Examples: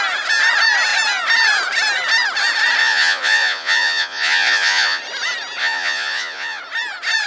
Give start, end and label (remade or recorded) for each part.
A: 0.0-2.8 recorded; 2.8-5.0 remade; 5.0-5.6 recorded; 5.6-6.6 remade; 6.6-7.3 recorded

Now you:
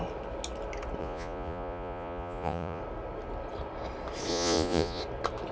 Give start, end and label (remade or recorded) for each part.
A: 0.0-1.0 recorded; 1.0-2.8 remade; 2.8-4.3 recorded; 4.3-5.0 remade; 5.0-5.5 recorded

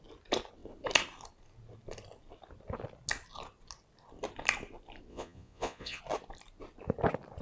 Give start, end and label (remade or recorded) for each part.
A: 0.0-5.1 recorded; 5.1-6.0 remade; 6.0-7.4 recorded

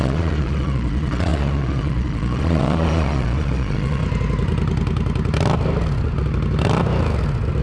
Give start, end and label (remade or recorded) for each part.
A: 0.0-4.0 remade; 4.0-7.6 recorded